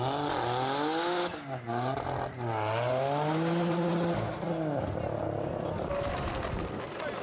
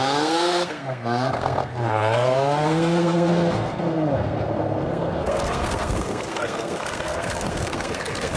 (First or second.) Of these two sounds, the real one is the first